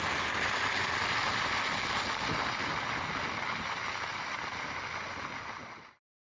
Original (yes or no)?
yes